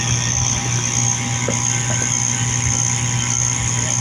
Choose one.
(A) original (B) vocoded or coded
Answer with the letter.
A